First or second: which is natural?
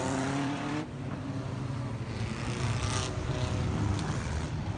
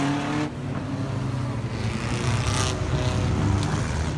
second